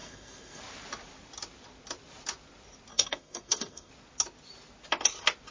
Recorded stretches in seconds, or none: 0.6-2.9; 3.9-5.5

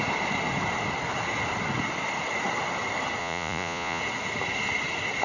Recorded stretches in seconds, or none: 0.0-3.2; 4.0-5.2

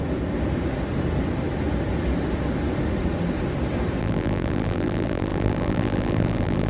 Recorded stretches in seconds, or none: 0.0-4.0

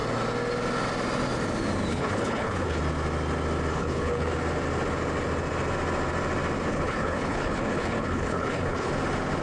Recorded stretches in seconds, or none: 0.0-1.9; 2.8-3.7; 4.3-6.7; 8.9-9.4